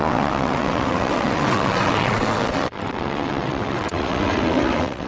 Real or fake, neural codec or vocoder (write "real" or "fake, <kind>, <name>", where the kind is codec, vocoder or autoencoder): fake, vocoder, WaveNeXt